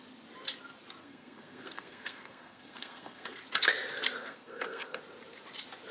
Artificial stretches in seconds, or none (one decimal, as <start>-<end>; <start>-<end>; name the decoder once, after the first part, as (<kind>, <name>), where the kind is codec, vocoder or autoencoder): 1.0-3.4 (codec, SNAC); 4.2-5.0